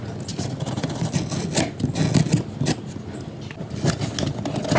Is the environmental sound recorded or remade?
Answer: recorded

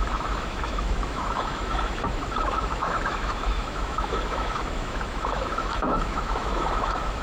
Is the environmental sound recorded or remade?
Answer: remade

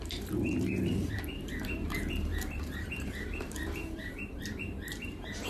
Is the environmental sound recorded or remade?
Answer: remade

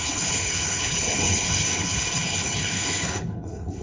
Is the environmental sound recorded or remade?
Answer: remade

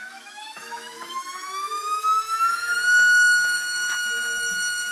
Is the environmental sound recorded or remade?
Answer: remade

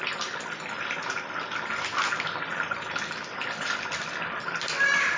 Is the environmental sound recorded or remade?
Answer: recorded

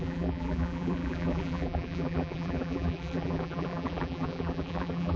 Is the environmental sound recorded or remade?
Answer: remade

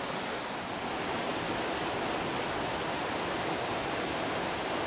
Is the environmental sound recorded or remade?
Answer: recorded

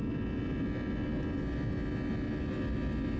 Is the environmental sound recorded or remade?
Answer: recorded